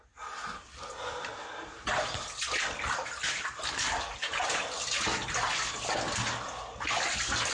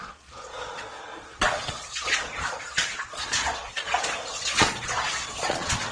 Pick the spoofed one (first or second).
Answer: second